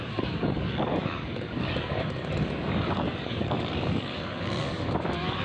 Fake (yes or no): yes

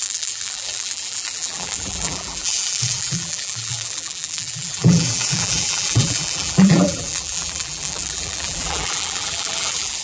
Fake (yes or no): yes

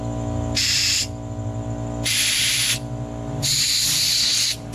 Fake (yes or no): yes